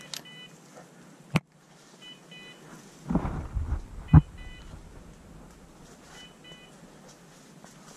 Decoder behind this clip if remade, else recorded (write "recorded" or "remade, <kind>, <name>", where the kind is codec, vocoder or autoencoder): recorded